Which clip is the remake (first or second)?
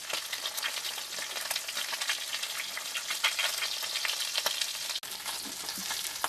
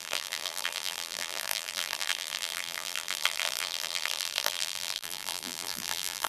second